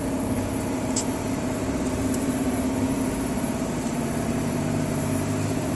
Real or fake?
fake